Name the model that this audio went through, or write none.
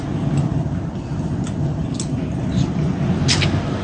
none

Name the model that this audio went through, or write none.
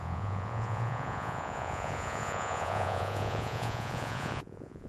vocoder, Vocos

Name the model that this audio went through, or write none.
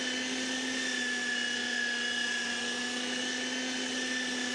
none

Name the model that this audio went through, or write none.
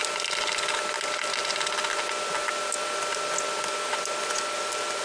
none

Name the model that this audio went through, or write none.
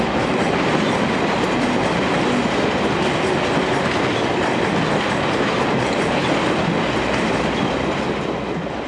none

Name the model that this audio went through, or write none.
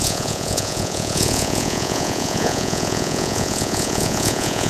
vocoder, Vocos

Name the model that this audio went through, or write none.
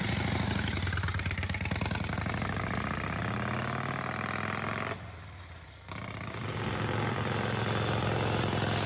none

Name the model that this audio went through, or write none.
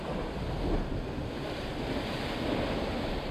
none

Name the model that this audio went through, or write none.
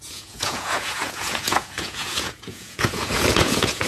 vocoder, Vocos